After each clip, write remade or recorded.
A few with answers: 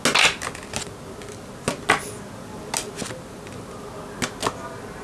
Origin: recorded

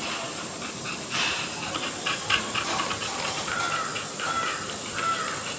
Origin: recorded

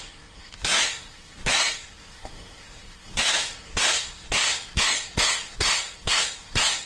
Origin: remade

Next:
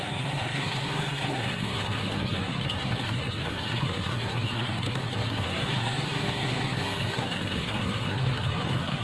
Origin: remade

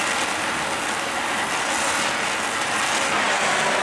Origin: recorded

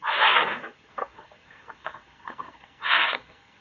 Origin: remade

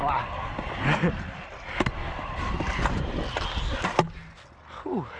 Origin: recorded